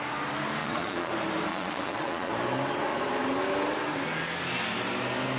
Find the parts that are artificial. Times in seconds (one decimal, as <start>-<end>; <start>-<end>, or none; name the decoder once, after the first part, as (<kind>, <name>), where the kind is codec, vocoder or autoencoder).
0.6-1.1 (vocoder, Vocos); 1.5-2.3